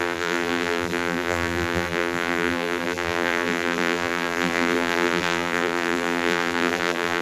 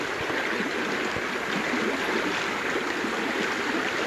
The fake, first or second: first